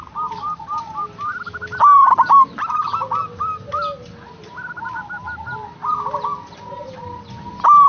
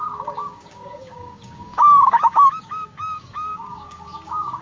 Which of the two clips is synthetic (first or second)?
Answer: second